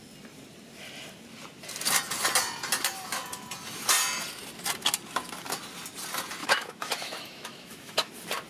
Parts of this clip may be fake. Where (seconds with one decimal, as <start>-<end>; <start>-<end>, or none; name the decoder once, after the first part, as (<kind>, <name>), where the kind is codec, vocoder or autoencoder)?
6.4-8.1 (autoencoder, DAC-VAE)